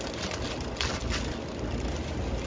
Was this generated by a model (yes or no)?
no